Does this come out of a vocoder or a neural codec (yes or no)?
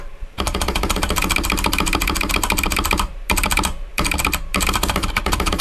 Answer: yes